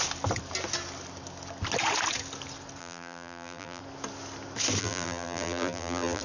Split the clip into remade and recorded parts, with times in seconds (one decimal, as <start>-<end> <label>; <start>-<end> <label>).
0.0-2.8 recorded; 2.8-3.8 remade; 3.8-4.8 recorded; 4.8-6.2 remade